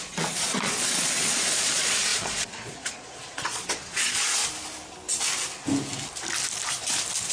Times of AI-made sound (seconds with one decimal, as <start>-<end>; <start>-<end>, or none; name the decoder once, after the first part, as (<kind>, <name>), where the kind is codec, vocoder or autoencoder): 0.0-4.4 (vocoder, Vocos)